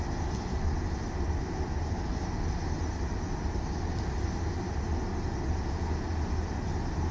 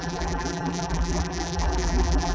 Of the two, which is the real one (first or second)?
first